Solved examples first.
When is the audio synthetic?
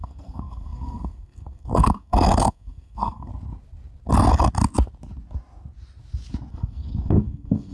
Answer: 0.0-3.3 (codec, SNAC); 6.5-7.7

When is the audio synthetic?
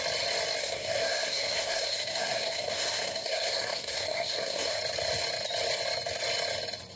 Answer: 0.6-4.8 (codec, SNAC)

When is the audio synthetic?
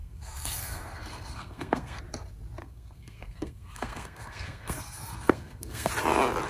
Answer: 0.0-2.0 (codec, SNAC); 2.6-5.9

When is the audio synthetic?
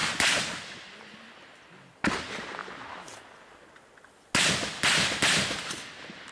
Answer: none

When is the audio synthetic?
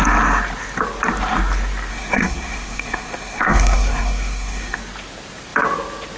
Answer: 1.9-4.8 (codec, SNAC)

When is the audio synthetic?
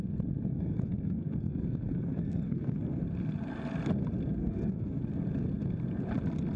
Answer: 0.5-3.0 (codec, SNAC); 4.4-5.0